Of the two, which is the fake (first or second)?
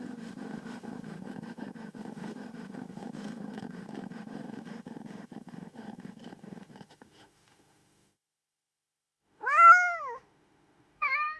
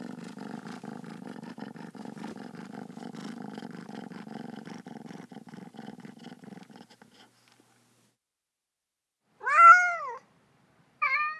first